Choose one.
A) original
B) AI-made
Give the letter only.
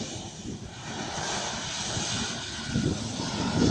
A